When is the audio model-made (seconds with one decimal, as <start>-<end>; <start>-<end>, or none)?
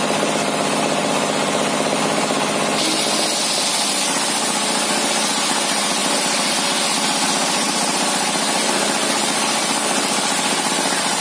none